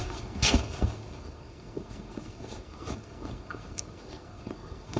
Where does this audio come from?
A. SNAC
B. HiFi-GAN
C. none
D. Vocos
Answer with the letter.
A